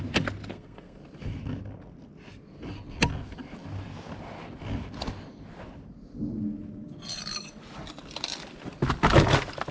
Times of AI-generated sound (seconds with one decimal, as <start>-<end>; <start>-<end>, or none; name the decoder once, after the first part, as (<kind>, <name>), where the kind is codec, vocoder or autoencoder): 0.5-1.0 (codec, SNAC)